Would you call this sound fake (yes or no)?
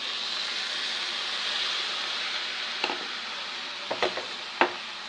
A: no